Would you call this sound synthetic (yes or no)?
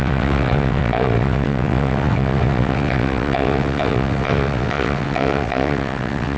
yes